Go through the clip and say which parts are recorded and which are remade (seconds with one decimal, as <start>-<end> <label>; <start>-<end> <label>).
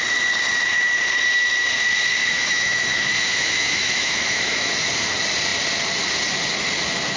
0.0-2.2 recorded; 2.2-4.7 remade; 4.7-7.2 recorded